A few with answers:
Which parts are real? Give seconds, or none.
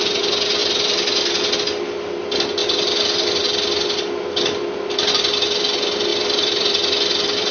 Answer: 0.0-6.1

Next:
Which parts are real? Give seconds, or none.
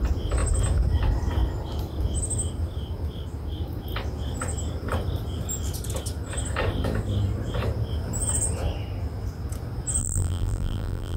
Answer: 0.0-10.0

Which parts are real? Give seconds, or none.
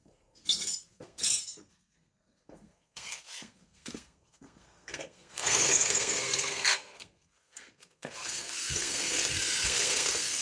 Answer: none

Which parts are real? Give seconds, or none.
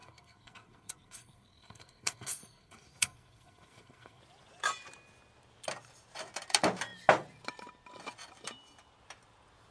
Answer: 4.2-9.7